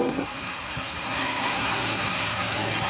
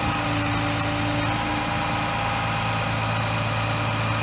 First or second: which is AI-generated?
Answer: first